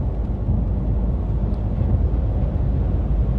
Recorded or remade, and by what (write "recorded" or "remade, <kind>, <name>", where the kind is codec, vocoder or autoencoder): recorded